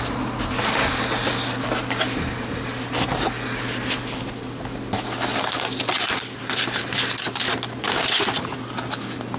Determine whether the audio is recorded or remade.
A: recorded